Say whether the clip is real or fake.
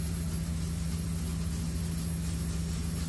real